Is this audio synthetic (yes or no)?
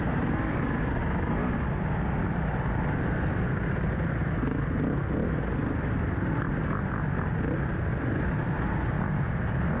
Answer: no